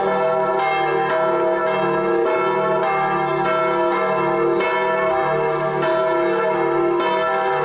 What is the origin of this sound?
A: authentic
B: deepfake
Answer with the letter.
A